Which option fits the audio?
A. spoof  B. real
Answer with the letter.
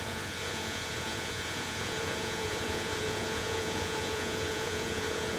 A